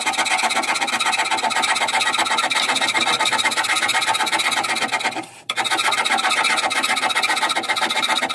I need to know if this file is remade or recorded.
recorded